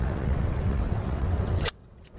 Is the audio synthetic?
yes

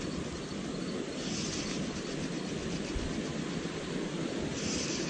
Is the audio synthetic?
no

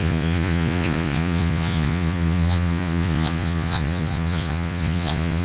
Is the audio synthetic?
yes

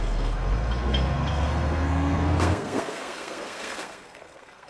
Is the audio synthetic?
yes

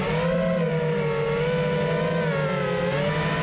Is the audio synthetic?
no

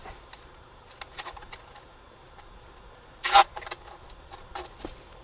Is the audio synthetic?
no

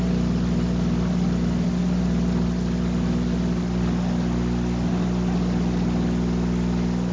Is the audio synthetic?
no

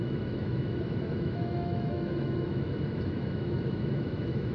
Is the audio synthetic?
yes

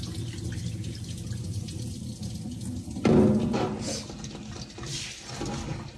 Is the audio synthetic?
no